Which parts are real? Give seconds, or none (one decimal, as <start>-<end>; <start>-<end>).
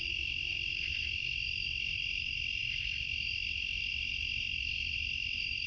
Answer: none